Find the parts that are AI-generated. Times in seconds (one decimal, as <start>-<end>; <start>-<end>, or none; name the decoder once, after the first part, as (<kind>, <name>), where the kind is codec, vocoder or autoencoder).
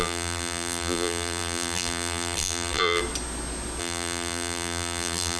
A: 0.0-3.0 (vocoder, BigVGAN v2); 3.8-5.4